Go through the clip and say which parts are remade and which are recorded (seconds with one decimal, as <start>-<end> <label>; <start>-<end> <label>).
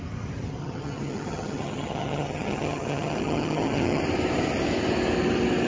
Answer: 0.0-0.6 recorded; 0.6-4.0 remade; 4.0-5.7 recorded